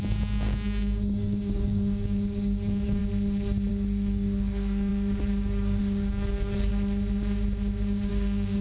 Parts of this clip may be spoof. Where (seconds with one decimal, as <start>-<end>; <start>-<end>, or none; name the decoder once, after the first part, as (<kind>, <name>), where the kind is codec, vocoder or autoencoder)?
0.0-3.0 (codec, DAC); 3.7-6.7; 8.1-8.6